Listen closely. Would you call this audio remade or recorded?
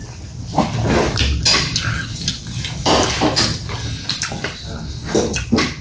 recorded